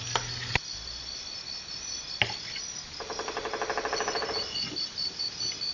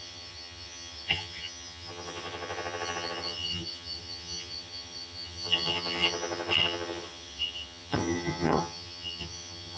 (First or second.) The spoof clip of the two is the second